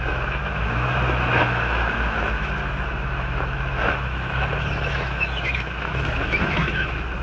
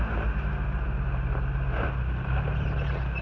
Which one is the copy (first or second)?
first